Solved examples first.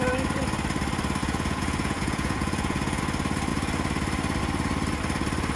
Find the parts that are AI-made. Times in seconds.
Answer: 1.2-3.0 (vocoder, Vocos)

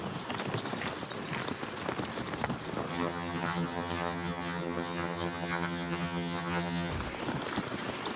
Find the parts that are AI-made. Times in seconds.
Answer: 2.9-6.9 (vocoder, HiFi-GAN)

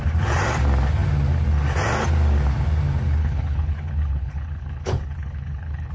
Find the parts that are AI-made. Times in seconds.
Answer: 3.2-5.9 (codec, HILCodec)

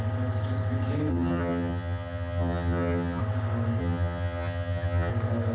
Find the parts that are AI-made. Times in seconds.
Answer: 1.1-3.2 (vocoder, HiFi-GAN); 3.8-5.1

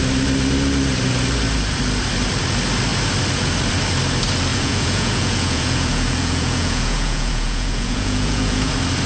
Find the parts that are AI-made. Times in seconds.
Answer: 4.5-8.7 (vocoder, Vocos)